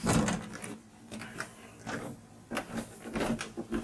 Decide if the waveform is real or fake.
fake